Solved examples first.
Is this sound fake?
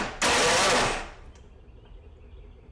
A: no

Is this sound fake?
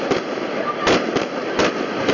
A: no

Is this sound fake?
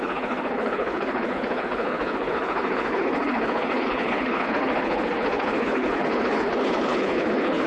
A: yes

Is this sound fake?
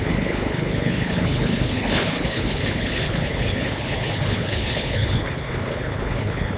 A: yes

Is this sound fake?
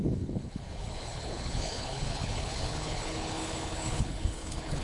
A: yes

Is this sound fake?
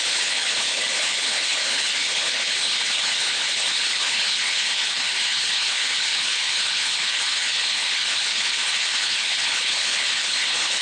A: yes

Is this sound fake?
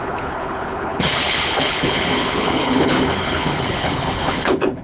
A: yes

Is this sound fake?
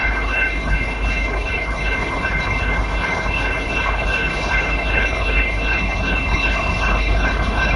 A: yes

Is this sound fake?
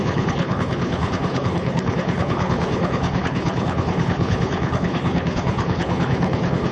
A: yes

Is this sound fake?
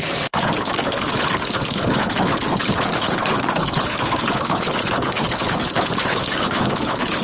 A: yes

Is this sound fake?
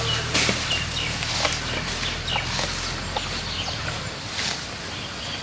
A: no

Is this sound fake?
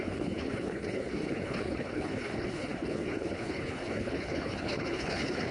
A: yes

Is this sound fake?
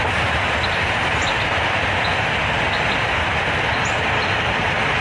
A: no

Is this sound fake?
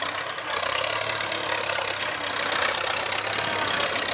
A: no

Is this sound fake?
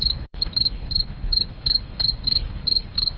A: yes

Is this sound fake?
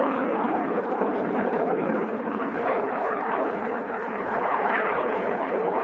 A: yes